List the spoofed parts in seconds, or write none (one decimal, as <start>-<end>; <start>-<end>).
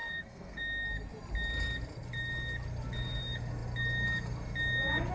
0.0-0.6